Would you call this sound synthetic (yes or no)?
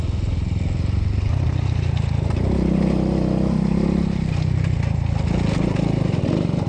no